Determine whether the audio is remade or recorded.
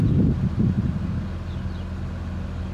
recorded